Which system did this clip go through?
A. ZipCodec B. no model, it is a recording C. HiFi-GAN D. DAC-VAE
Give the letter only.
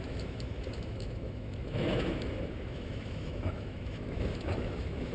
D